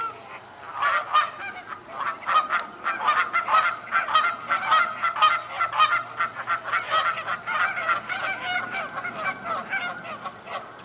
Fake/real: fake